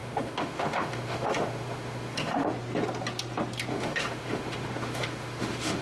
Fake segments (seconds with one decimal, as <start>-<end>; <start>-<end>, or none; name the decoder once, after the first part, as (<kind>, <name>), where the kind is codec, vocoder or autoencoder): 0.0-2.5 (autoencoder, DAC-VAE); 3.7-5.8

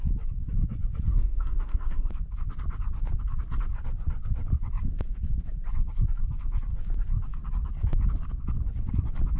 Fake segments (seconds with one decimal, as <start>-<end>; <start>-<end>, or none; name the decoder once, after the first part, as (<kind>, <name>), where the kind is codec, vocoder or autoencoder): 1.1-2.1 (codec, SNAC)

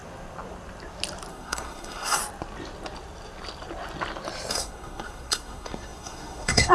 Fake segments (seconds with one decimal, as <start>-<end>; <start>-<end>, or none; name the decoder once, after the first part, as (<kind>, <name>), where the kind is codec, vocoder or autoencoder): 1.3-2.2 (codec, SNAC); 4.5-6.7

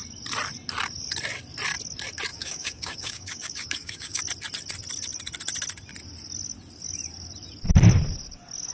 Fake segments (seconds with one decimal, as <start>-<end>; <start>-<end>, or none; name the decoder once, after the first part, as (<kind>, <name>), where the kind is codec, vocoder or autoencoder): 2.3-4.2 (codec, DAC)

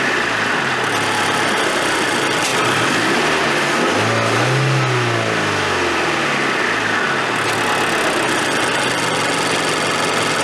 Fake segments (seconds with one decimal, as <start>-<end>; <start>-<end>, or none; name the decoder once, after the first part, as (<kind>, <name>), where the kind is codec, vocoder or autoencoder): none

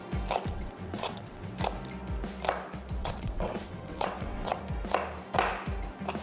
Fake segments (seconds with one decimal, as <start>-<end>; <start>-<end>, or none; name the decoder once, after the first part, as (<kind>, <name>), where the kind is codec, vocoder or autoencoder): 0.5-1.5 (vocoder, WaveNeXt); 3.0-4.6